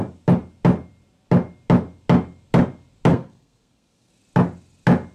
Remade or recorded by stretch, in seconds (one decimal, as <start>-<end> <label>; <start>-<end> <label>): 0.0-3.1 recorded; 3.1-4.1 remade; 4.1-5.1 recorded